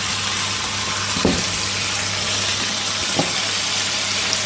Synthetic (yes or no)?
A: no